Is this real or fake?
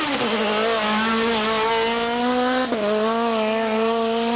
real